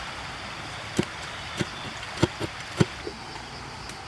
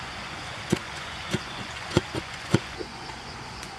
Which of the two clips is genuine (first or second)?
first